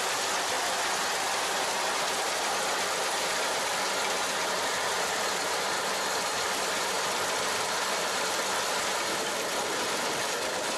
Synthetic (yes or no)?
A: yes